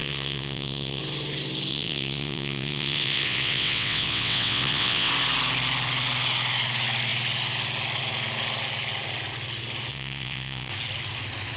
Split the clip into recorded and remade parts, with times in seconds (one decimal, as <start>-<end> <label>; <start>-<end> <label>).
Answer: 0.0-1.0 remade; 1.0-1.7 recorded; 1.7-5.1 remade; 5.1-9.9 recorded; 9.9-10.7 remade; 10.7-11.6 recorded